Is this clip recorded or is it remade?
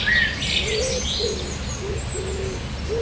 recorded